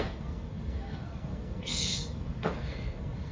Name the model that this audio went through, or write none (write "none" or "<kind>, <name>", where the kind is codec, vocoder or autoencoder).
codec, SNAC